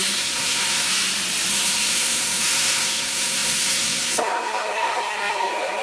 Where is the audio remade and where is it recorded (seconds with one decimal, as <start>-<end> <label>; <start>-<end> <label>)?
0.0-0.9 remade; 0.9-1.5 recorded; 1.5-5.8 remade